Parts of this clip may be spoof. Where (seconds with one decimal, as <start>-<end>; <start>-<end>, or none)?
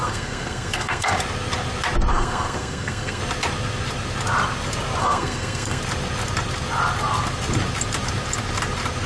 0.0-1.1; 2.1-3.2; 5.0-5.8